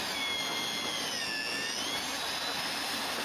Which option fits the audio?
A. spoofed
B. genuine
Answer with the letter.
B